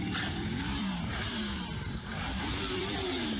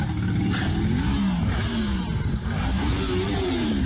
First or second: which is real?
second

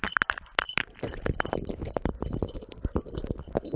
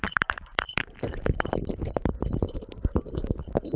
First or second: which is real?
first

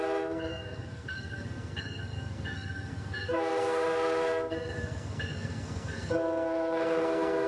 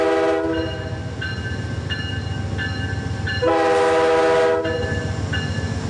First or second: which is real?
second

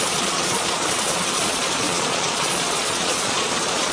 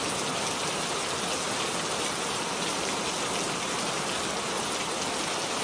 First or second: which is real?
second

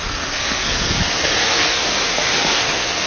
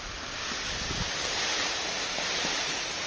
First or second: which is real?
second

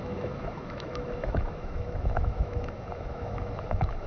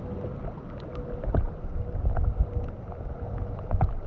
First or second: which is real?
second